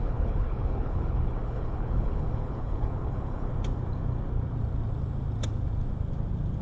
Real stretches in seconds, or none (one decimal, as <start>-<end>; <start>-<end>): 3.5-6.6